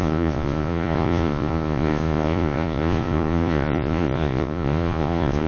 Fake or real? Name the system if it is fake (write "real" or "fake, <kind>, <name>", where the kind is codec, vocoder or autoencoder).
fake, vocoder, Vocos